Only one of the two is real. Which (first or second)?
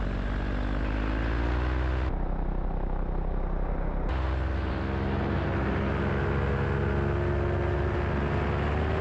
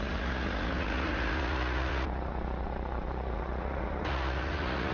first